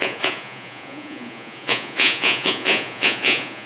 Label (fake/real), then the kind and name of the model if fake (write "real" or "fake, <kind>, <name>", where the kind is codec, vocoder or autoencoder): fake, vocoder, Vocos